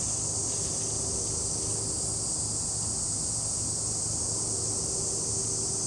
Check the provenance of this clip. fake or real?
real